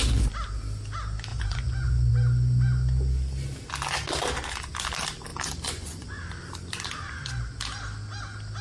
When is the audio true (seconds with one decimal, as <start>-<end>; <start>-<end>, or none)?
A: 0.0-1.3; 2.1-5.3; 6.2-8.6